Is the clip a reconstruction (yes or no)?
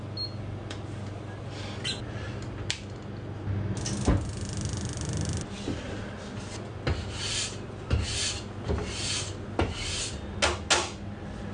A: no